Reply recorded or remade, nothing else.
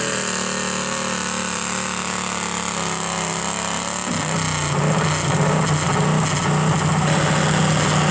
recorded